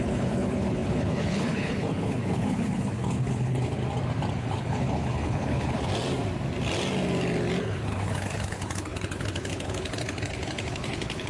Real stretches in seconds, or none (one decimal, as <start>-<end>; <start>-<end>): 3.8-4.3; 5.9-7.6